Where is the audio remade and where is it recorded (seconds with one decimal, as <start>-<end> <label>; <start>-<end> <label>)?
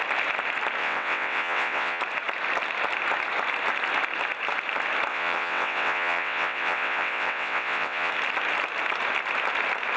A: 0.0-0.8 recorded; 0.8-2.0 remade; 2.0-5.1 recorded; 5.1-8.1 remade; 8.1-10.0 recorded